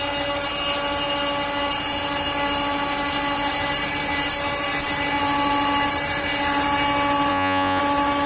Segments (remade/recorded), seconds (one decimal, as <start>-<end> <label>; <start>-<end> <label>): 0.0-7.3 recorded; 7.3-7.8 remade; 7.8-8.3 recorded